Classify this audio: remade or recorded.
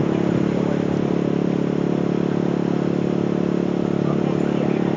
recorded